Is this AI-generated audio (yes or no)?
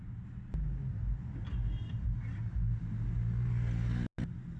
no